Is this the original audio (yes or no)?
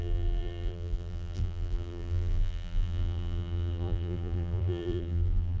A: no